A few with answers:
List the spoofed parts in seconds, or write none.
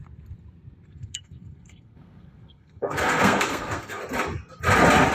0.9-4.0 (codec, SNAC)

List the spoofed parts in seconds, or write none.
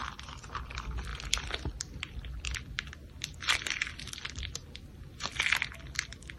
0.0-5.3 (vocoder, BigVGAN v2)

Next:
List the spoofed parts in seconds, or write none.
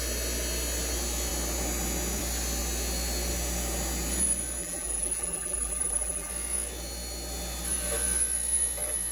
4.6-6.3 (vocoder, BigVGAN v2)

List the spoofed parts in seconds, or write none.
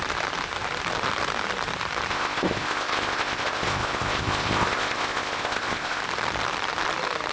2.1-6.0 (codec, ZipCodec)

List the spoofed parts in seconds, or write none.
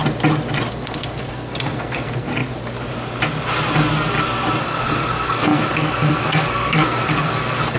0.7-2.3 (codec, SNAC); 4.6-7.8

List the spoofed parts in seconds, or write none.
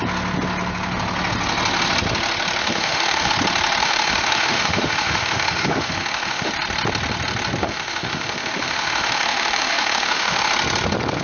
2.6-3.3 (autoencoder, DAC-VAE); 3.8-6.5; 7.6-10.5